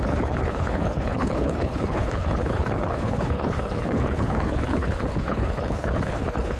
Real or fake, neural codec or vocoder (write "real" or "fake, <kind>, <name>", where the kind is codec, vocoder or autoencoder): fake, codec, HILCodec